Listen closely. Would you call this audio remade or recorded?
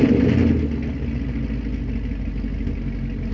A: recorded